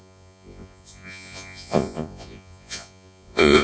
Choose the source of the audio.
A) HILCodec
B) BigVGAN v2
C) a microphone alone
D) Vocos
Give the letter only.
D